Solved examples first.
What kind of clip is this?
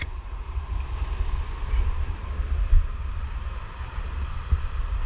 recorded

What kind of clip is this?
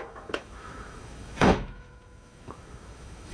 remade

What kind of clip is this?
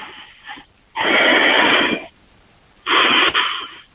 recorded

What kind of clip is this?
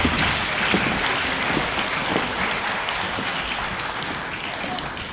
recorded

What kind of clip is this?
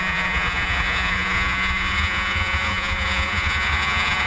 remade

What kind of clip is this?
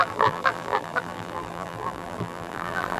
remade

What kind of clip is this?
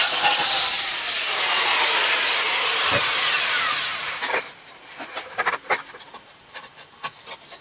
recorded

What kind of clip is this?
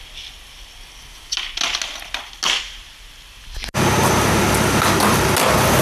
recorded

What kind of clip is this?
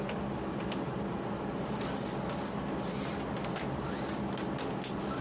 recorded